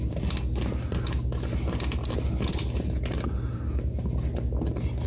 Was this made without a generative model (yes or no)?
yes